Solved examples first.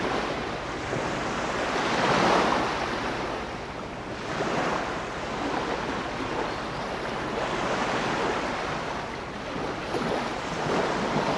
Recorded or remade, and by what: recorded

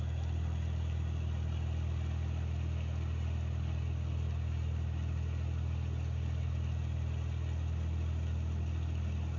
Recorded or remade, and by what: recorded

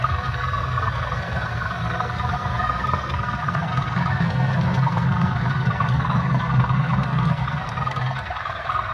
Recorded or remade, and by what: remade, codec, SNAC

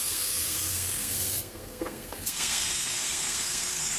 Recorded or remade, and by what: remade, codec, SNAC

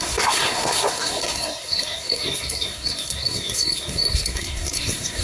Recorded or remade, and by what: remade, codec, SNAC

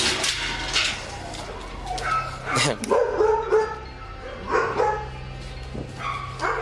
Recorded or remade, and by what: recorded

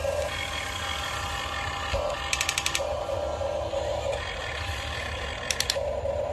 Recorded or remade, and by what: recorded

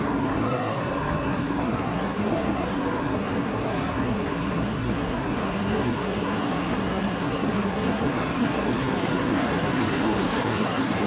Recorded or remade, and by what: remade, codec, SNAC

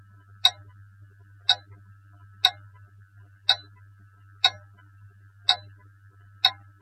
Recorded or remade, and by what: recorded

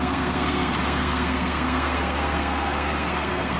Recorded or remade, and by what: remade, codec, SNAC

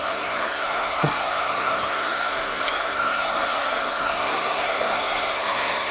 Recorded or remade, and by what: remade, codec, SNAC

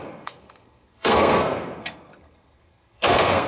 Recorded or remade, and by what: remade, codec, SNAC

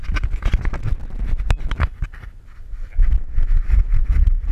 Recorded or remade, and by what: recorded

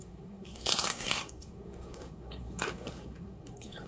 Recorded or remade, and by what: remade, codec, SNAC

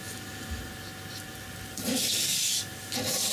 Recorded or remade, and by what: recorded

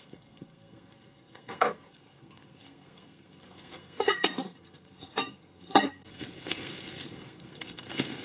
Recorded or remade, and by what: remade, codec, SNAC